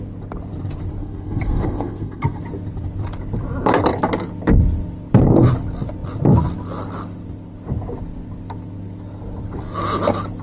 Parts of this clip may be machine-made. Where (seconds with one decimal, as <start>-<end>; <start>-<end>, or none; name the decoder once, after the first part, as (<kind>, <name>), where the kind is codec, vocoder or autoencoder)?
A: 1.0-2.4 (codec, SNAC)